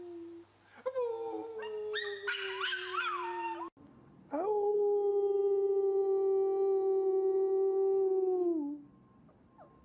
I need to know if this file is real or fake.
real